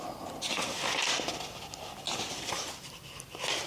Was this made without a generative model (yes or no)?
yes